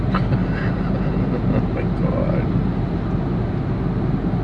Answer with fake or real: real